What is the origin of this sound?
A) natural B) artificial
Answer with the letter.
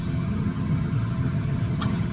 B